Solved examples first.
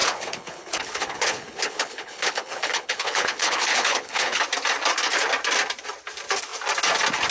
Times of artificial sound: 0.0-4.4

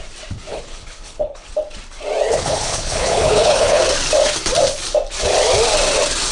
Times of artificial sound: 0.5-1.5; 2.3-3.8

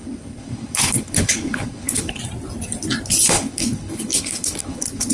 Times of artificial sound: 0.0-2.2; 3.3-5.1

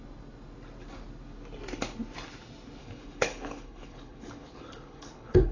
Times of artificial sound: 2.8-5.5

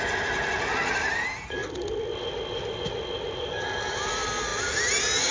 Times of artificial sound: none

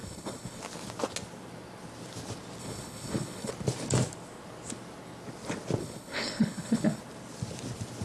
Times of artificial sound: 0.0-0.6; 2.6-3.5; 5.8-7.0